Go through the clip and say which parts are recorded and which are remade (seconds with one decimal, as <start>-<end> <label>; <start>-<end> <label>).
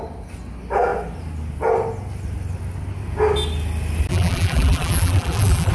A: 0.0-4.1 recorded; 4.1-5.7 remade